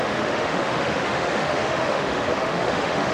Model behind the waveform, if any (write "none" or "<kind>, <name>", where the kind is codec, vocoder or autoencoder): autoencoder, DAC-VAE